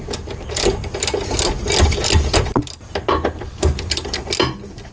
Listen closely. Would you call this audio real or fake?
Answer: real